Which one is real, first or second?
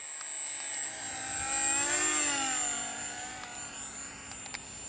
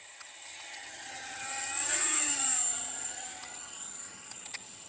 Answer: first